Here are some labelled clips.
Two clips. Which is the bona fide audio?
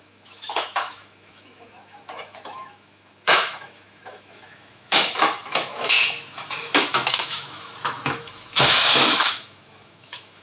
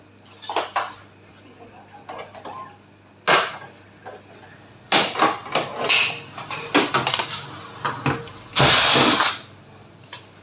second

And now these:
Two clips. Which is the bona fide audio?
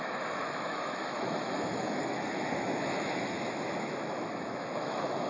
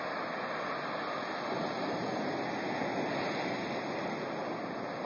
second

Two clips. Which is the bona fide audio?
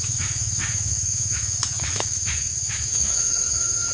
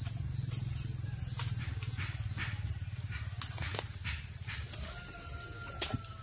second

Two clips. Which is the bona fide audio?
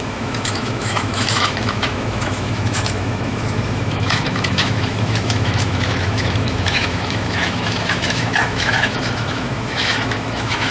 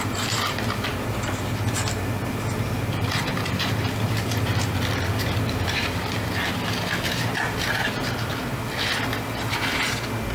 second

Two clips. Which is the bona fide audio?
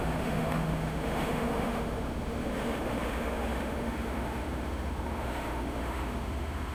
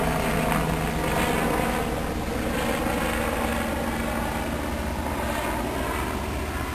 second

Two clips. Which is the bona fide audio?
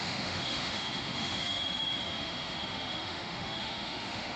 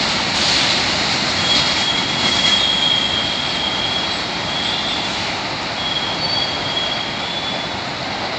second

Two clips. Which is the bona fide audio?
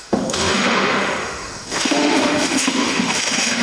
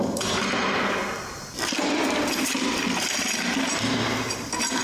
second